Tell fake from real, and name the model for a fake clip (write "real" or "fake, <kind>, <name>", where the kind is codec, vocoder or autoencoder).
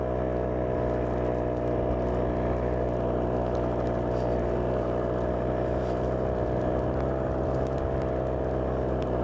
real